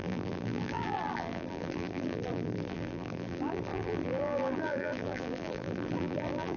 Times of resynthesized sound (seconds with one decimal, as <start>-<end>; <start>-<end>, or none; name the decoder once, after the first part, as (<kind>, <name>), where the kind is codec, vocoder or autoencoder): 0.0-6.6 (vocoder, BigVGAN v2)